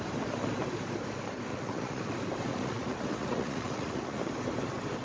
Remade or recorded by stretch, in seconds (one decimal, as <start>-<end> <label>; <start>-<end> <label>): 0.0-1.5 recorded; 1.5-2.0 remade; 2.0-2.5 recorded; 2.5-4.2 remade; 4.2-5.0 recorded